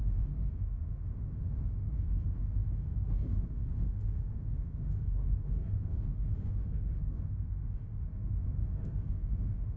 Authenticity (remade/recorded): remade